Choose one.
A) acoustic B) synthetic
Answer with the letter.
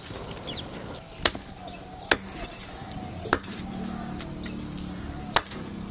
A